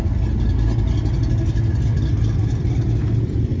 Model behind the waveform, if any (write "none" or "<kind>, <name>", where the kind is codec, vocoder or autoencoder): none